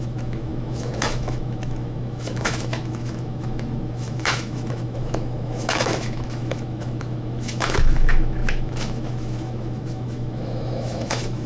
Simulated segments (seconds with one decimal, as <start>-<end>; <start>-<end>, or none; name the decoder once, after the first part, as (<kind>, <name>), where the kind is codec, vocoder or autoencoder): 0.0-11.5 (autoencoder, DAC-VAE)